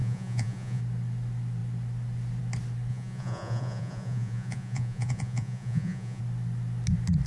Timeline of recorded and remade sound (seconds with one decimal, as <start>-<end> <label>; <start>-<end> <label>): 0.0-0.8 remade; 0.8-2.9 recorded; 2.9-6.2 remade; 6.2-7.3 recorded